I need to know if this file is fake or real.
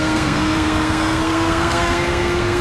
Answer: fake